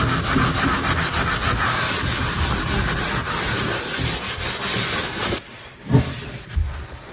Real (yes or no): yes